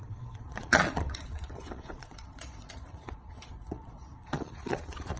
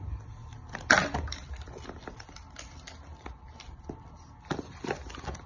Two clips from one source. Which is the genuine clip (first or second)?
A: second